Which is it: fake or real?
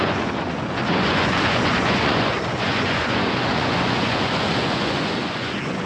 fake